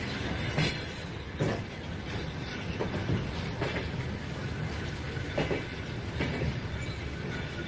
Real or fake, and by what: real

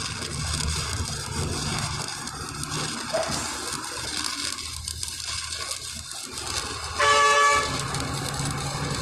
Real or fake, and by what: real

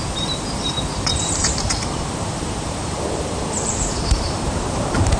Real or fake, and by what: fake, vocoder, BigVGAN v2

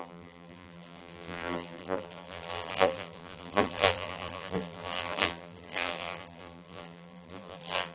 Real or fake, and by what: fake, vocoder, BigVGAN v2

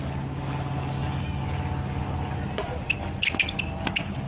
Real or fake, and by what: real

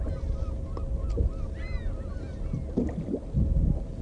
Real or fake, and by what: real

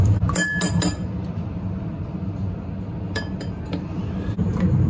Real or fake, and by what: real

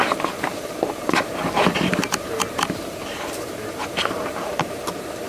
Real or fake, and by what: fake, vocoder, BigVGAN v2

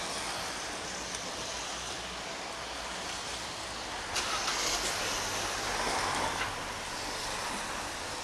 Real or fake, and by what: real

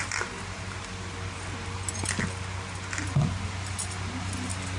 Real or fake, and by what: real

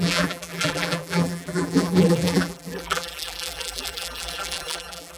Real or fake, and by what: fake, vocoder, BigVGAN v2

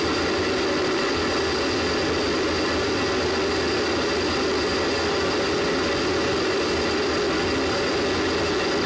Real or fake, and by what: real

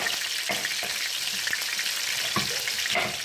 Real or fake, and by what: real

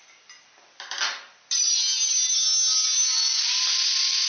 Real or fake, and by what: real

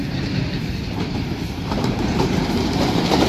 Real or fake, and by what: fake, vocoder, BigVGAN v2